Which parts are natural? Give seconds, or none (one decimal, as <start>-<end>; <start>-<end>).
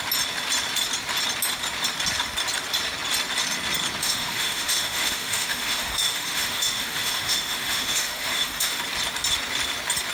0.0-4.0; 8.8-10.1